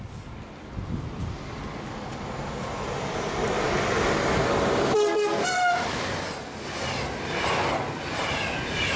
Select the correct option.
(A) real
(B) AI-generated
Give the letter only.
A